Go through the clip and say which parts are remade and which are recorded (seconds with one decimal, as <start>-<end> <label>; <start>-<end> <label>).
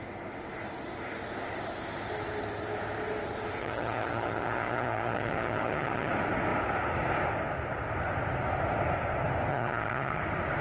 0.0-3.6 recorded; 3.6-6.1 remade; 6.1-9.5 recorded; 9.5-10.2 remade; 10.2-10.6 recorded